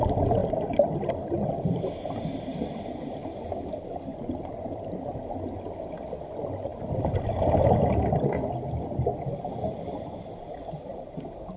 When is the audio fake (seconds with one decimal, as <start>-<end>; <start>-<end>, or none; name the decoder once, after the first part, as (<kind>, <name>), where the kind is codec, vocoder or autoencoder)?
4.1-5.0 (vocoder, BigVGAN v2); 10.9-11.6